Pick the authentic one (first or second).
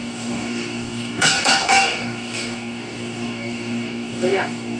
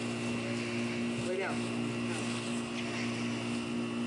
second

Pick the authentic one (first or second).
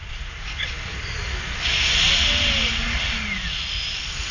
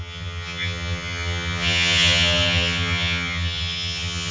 first